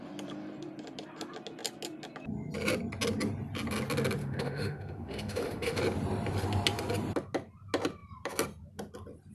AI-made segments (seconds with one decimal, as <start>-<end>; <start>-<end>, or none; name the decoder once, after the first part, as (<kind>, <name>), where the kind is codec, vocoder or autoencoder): 4.2-5.8 (autoencoder, DAC-VAE)